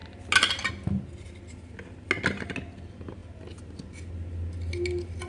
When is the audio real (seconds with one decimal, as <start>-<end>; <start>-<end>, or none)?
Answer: 0.0-5.3